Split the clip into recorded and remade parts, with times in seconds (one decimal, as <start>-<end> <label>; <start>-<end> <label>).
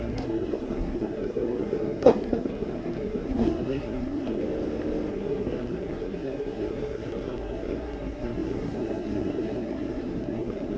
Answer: 0.0-4.4 remade; 4.4-5.1 recorded; 5.1-10.8 remade